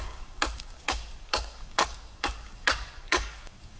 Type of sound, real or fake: fake